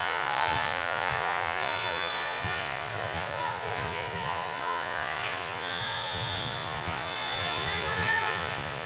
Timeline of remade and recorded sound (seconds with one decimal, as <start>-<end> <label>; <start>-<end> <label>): 0.0-8.9 remade